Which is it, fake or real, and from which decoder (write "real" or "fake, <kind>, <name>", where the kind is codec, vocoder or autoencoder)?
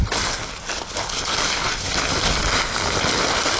real